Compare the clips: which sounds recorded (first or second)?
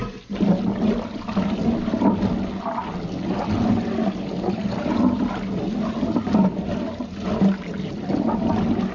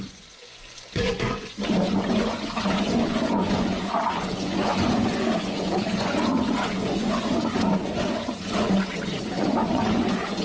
first